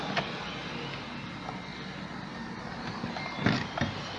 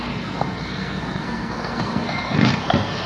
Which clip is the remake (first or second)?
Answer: second